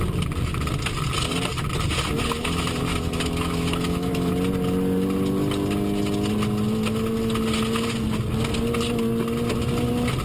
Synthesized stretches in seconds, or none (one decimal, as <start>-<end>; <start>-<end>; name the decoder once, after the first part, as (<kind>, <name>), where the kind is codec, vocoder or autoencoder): 2.9-4.3 (autoencoder, DAC-VAE)